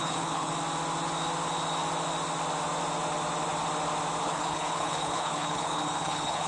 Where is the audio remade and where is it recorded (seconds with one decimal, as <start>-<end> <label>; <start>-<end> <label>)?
0.0-0.5 remade; 0.5-4.2 recorded; 4.2-6.5 remade